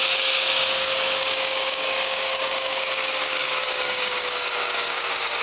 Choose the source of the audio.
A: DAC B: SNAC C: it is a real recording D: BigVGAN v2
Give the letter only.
A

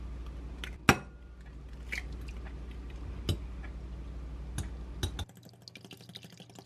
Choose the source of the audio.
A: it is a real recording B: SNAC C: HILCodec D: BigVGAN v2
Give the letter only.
A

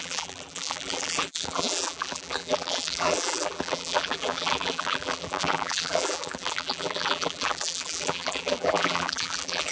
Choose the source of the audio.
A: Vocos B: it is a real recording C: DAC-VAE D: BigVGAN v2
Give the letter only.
D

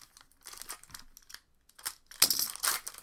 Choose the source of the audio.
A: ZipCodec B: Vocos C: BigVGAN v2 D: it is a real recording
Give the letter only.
D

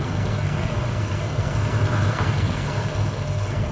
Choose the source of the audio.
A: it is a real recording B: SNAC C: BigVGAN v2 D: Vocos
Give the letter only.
B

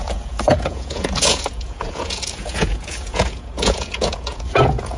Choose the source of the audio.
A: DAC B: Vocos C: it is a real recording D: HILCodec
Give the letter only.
B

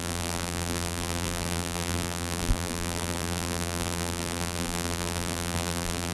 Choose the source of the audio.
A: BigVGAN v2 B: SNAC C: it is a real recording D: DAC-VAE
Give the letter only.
A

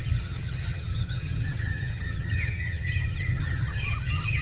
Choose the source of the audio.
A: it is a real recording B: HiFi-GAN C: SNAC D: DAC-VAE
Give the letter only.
B